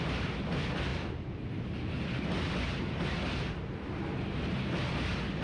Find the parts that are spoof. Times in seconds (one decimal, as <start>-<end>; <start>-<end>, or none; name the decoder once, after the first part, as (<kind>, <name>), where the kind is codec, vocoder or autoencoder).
none